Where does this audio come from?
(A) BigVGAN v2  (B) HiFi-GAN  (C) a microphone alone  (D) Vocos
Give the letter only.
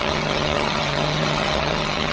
B